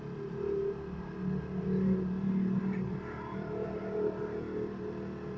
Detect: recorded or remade recorded